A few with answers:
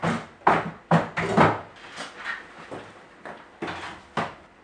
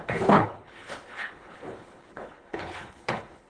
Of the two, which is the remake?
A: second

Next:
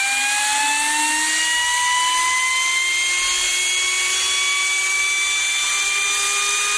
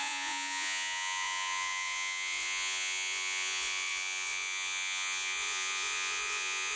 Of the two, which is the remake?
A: second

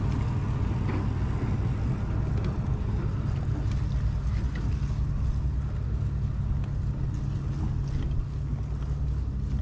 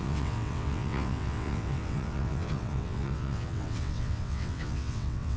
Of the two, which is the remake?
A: second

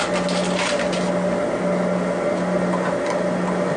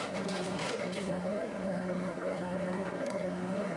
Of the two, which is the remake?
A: second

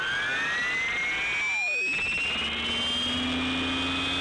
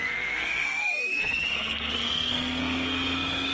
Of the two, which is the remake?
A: second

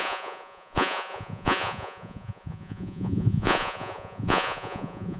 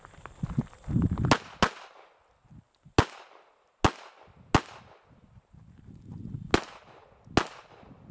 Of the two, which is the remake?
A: first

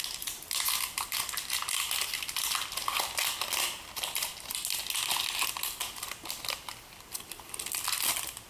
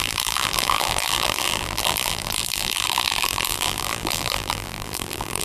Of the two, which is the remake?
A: second